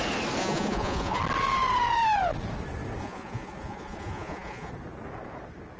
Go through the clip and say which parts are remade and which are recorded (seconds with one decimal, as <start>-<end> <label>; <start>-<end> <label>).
0.0-0.4 recorded; 0.4-1.2 remade; 1.2-3.0 recorded; 3.0-4.7 remade; 4.7-5.8 recorded